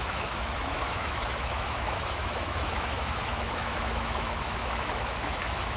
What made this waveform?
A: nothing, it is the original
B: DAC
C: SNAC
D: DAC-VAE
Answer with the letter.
D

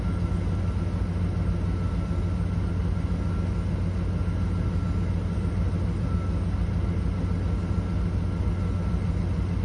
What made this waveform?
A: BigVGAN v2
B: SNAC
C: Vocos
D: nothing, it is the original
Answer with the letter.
D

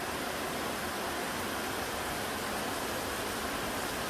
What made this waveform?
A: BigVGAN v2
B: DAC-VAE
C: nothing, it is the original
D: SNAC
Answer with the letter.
C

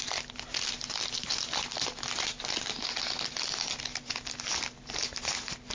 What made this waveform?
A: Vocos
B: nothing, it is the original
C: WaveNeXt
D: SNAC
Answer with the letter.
B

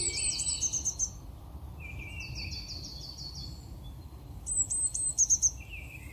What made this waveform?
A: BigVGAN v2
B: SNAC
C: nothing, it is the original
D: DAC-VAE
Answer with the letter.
C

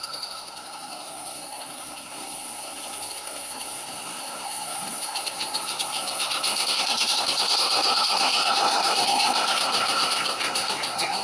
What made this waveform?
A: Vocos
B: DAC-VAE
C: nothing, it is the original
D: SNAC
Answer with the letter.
D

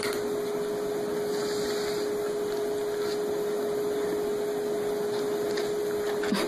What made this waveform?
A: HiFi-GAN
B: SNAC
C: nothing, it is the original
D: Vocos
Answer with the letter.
C